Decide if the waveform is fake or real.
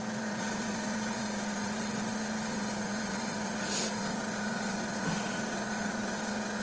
fake